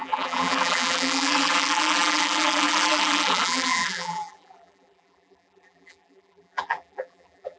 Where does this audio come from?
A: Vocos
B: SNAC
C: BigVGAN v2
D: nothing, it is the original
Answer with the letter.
C